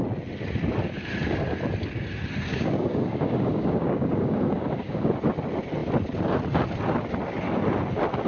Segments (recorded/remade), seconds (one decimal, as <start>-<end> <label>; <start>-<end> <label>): 0.0-2.5 recorded; 2.5-5.1 remade; 5.1-8.3 recorded